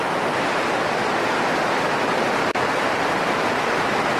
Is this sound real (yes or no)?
yes